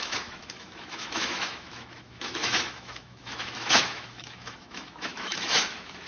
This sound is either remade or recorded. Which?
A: remade